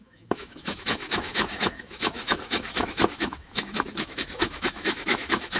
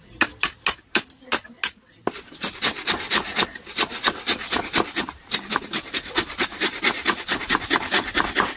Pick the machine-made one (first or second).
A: first